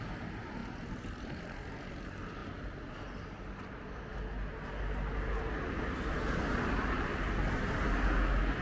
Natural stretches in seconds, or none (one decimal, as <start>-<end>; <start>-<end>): 0.0-0.6; 1.4-8.6